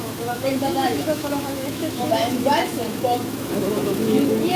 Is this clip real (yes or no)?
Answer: no